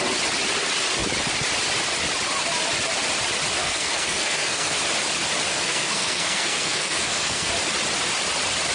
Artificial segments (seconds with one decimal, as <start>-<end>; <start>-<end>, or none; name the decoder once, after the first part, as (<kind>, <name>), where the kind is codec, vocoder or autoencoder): 3.6-4.8 (codec, SNAC); 5.5-7.5